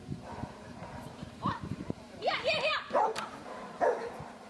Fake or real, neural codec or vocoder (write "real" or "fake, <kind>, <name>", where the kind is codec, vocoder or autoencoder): fake, vocoder, BigVGAN v2